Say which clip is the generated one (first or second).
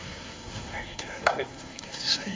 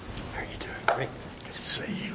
first